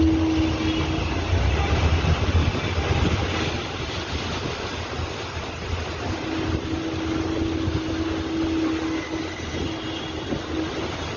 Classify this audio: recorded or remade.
recorded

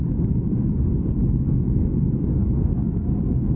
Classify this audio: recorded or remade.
remade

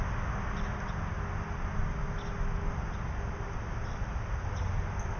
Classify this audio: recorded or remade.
recorded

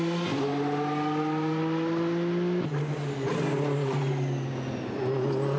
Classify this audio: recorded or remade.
recorded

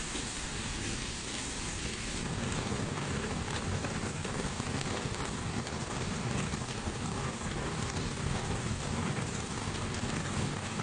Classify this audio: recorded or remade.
remade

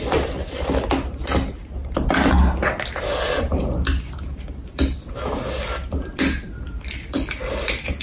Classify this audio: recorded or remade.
recorded